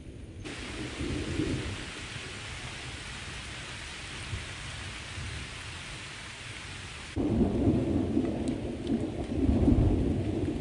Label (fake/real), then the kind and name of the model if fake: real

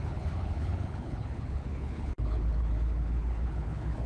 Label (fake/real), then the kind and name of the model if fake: fake, codec, HILCodec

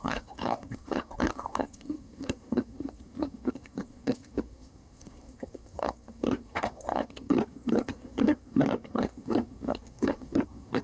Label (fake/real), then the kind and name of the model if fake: fake, codec, SNAC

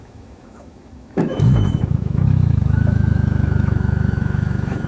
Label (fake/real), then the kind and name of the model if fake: fake, autoencoder, DAC-VAE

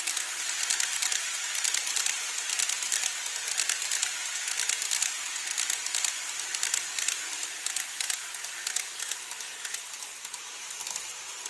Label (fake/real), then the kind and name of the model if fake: real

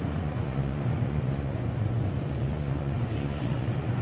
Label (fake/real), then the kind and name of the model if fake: fake, vocoder, Vocos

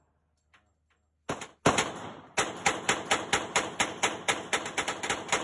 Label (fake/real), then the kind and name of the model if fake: real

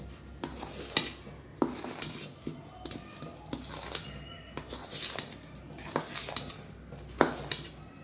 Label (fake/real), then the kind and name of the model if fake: real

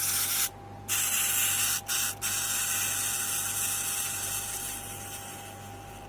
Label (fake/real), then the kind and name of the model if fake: real